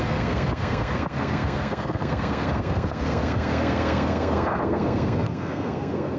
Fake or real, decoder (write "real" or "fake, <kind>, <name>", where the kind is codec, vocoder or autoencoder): fake, codec, SNAC